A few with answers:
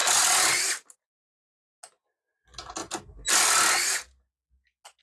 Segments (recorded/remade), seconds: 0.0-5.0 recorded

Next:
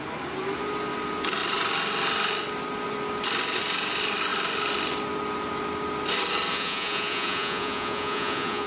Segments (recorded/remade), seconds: 0.0-6.5 recorded; 6.5-8.7 remade

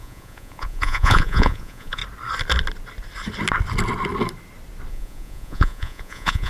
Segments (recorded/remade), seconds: 0.0-2.0 remade; 2.0-4.9 recorded; 4.9-6.5 remade